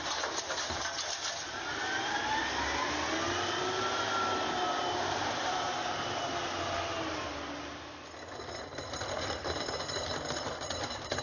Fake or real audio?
real